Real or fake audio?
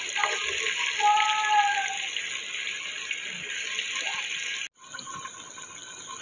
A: real